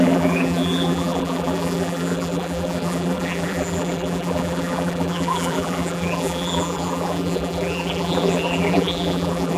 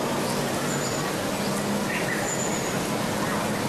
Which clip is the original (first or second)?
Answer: second